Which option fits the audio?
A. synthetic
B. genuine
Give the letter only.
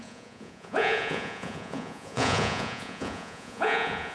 A